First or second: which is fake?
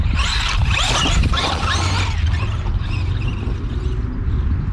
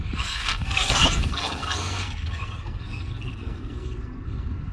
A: second